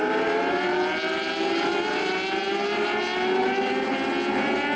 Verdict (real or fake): real